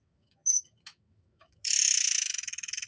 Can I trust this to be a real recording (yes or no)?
no